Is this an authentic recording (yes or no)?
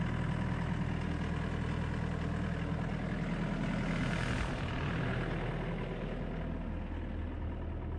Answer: yes